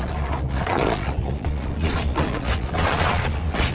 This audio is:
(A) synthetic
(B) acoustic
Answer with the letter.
A